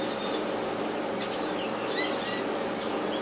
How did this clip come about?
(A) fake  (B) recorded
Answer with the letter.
B